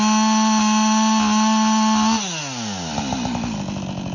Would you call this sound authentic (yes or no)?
yes